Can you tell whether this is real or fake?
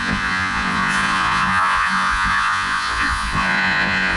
fake